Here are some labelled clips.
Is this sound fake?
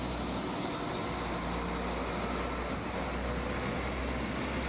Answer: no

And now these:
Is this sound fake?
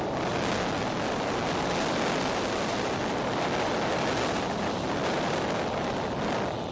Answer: no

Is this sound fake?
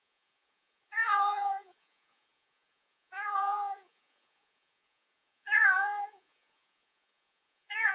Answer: yes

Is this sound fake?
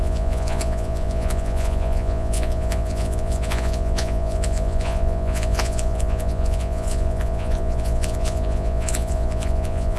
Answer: yes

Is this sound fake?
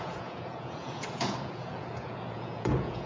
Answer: yes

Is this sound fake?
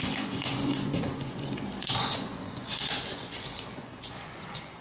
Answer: yes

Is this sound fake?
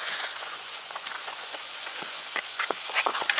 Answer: yes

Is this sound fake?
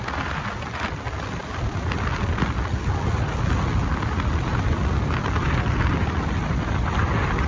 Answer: no